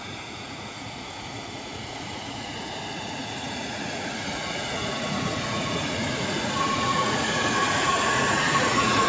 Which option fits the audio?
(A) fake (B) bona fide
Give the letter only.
A